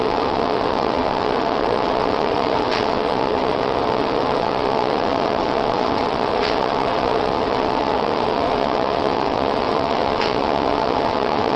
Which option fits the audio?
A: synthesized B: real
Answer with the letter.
A